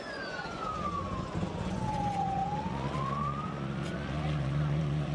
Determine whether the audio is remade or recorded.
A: remade